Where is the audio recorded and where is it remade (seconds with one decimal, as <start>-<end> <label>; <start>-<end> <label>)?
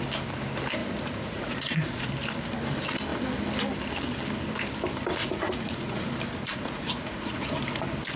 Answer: 0.0-0.8 recorded; 0.8-2.1 remade; 2.1-5.2 recorded; 5.2-6.1 remade; 6.1-6.5 recorded; 6.5-7.5 remade; 7.5-8.2 recorded